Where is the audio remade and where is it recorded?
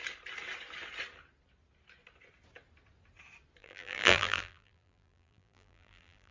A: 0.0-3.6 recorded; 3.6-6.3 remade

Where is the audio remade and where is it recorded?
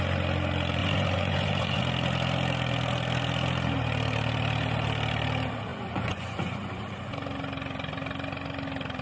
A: 0.0-0.8 recorded; 0.8-1.8 remade; 1.8-5.7 recorded; 5.7-7.1 remade; 7.1-9.0 recorded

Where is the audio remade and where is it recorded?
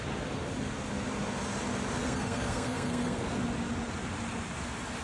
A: 0.0-2.0 recorded; 2.0-3.4 remade; 3.4-5.0 recorded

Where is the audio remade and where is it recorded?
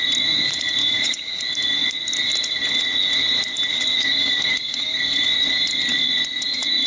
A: 0.0-0.8 recorded; 0.8-1.4 remade; 1.4-3.7 recorded; 3.7-5.0 remade; 5.0-6.9 recorded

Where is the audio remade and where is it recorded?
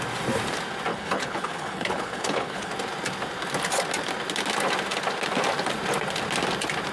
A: 0.0-0.9 recorded; 0.9-2.7 remade; 2.7-6.9 recorded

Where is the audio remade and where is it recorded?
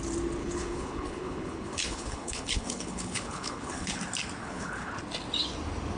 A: 0.0-0.4 recorded; 0.4-4.0 remade; 4.0-4.4 recorded; 4.4-4.9 remade; 4.9-6.0 recorded